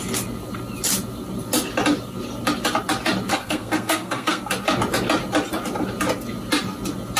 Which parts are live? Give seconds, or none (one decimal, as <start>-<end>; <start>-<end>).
0.0-3.3; 4.5-7.2